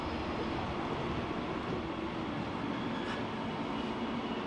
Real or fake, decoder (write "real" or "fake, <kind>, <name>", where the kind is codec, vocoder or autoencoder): real